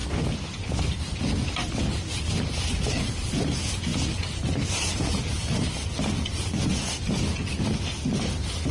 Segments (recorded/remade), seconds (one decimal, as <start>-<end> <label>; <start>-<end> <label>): 0.0-8.7 recorded